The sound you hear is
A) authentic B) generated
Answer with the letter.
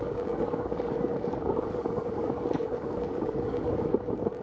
B